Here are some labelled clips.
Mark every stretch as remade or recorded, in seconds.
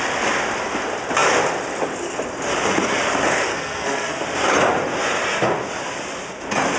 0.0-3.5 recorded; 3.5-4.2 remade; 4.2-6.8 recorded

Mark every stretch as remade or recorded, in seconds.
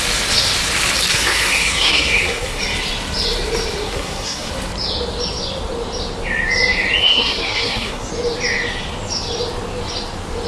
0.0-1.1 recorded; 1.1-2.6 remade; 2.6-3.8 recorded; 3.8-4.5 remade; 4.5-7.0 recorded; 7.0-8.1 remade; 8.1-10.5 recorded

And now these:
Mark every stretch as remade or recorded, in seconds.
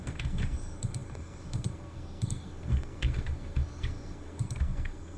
0.0-5.2 remade